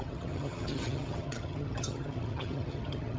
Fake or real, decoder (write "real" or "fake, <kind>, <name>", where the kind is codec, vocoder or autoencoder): fake, vocoder, HiFi-GAN